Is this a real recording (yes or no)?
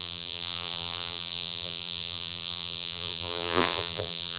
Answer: no